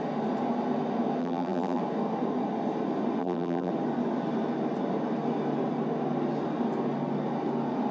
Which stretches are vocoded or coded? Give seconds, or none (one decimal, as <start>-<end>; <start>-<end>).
1.2-1.8; 3.2-3.7